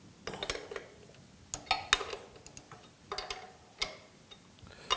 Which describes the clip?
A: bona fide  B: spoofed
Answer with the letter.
A